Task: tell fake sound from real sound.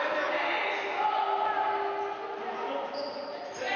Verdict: real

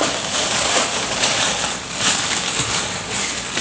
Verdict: fake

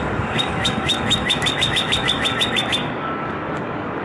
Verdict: fake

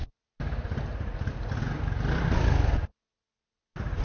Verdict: real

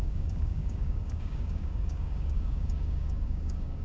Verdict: fake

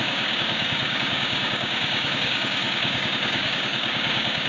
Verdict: fake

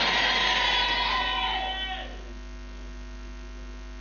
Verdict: real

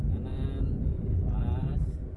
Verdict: real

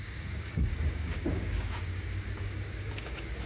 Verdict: fake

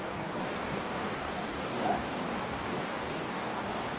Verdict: fake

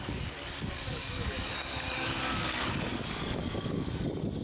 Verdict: fake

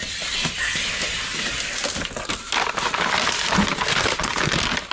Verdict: real